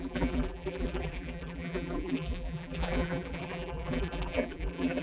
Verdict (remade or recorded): remade